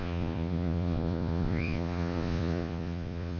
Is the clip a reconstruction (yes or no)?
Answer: yes